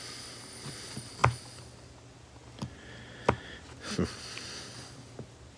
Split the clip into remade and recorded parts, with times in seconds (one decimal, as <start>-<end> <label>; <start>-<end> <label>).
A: 0.0-5.6 recorded